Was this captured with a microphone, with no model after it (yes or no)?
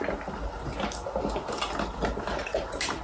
yes